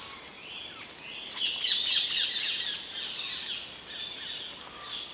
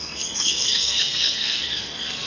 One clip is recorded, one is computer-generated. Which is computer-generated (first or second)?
second